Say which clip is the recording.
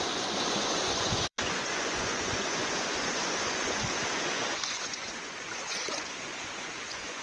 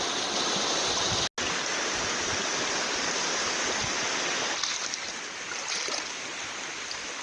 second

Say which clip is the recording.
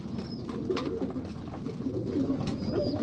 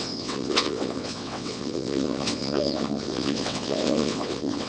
first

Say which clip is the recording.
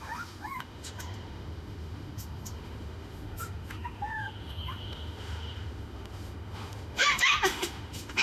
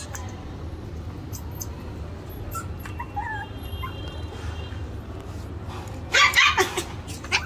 second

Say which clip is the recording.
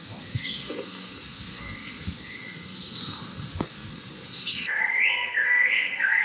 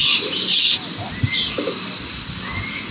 second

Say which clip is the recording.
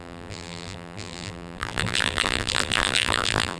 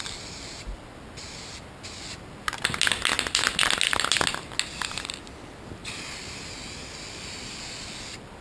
second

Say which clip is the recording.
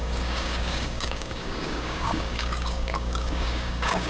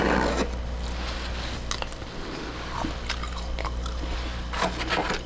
second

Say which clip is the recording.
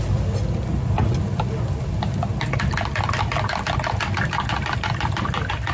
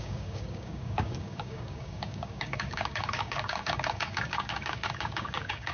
first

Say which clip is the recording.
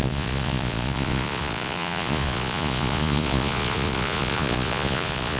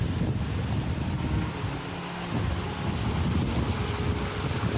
second